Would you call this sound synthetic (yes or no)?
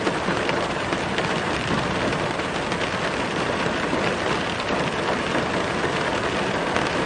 yes